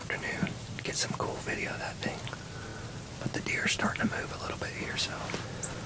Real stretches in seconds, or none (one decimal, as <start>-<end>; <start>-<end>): 1.6-5.9